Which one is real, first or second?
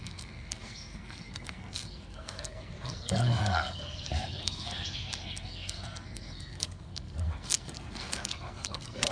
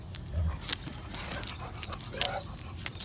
second